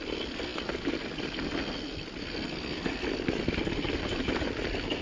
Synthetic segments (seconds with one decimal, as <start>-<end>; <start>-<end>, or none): none